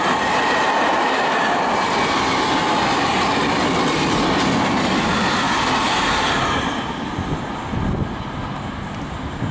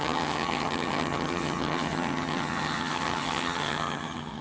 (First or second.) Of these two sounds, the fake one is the second